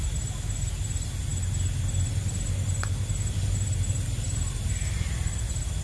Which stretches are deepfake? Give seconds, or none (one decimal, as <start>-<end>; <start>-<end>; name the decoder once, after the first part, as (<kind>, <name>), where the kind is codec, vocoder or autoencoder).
none